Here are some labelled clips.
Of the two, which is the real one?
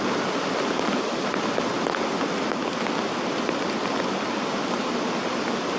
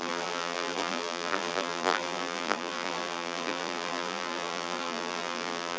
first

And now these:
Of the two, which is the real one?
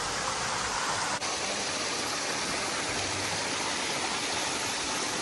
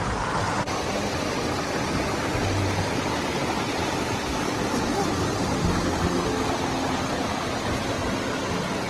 second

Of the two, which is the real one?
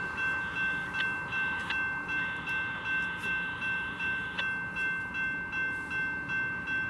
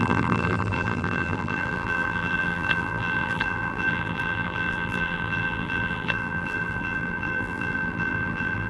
first